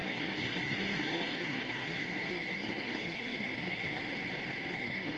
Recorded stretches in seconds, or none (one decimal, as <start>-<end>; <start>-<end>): 4.0-4.7